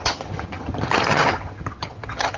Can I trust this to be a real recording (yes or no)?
no